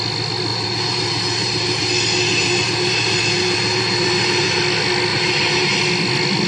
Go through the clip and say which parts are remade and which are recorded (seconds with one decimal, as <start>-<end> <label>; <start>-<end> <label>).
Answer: 0.0-0.5 recorded; 0.5-1.9 remade; 1.9-2.3 recorded; 2.3-4.6 remade; 4.6-5.1 recorded; 5.1-5.8 remade; 5.8-6.5 recorded